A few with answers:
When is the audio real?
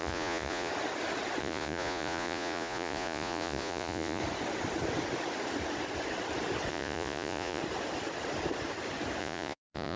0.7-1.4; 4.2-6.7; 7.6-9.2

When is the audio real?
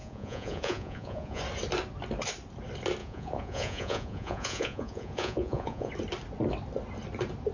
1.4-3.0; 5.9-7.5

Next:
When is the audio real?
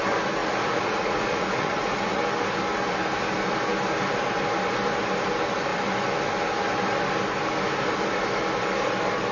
0.0-0.4; 2.2-9.3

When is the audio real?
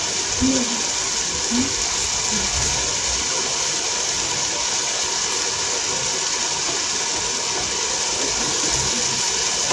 0.0-9.7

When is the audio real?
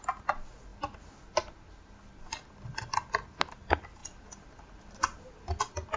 0.0-6.0